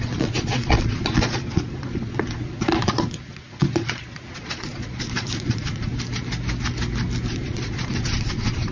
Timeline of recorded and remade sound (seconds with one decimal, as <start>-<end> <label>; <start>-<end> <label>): 0.0-5.9 remade; 5.9-7.3 recorded; 7.3-8.7 remade